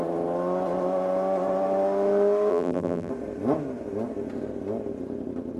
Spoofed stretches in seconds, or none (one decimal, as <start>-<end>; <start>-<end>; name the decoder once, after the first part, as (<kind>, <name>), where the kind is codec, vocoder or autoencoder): 2.5-3.1 (vocoder, BigVGAN v2)